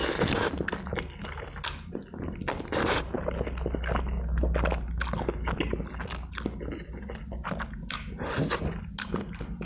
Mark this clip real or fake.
real